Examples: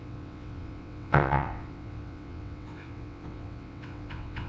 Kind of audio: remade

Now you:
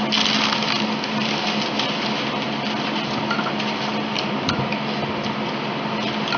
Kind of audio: recorded